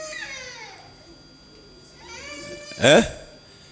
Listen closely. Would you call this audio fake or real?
real